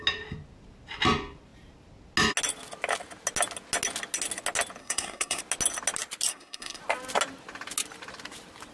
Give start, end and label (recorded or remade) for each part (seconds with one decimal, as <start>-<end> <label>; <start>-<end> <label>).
0.0-4.8 recorded; 4.8-5.4 remade; 5.4-6.3 recorded; 6.3-6.8 remade; 6.8-8.7 recorded